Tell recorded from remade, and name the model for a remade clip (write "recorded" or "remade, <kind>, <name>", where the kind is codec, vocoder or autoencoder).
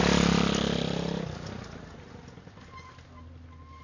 recorded